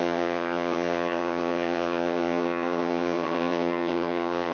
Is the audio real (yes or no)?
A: no